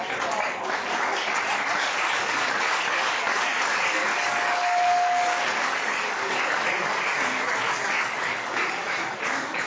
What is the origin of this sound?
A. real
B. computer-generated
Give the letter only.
B